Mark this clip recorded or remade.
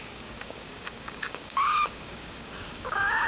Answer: remade